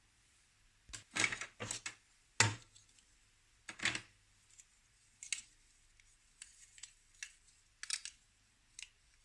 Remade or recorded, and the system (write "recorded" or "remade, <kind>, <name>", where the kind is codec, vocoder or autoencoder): recorded